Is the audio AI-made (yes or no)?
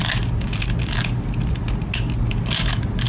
no